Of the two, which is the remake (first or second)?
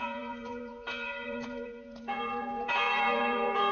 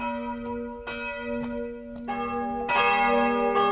first